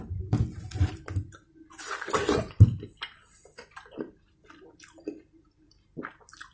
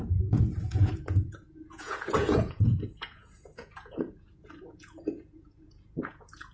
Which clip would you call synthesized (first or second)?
second